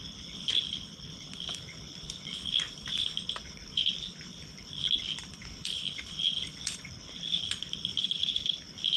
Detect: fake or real fake